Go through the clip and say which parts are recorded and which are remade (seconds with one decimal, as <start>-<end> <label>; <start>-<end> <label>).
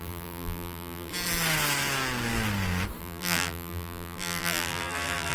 0.0-1.1 remade; 1.1-3.0 recorded; 3.0-5.3 remade